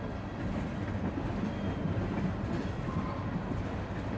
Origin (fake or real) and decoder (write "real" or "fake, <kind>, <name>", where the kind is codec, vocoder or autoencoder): real